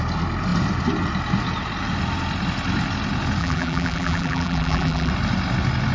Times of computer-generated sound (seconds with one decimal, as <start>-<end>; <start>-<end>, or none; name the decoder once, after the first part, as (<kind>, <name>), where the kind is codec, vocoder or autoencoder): 3.4-5.1 (vocoder, BigVGAN v2)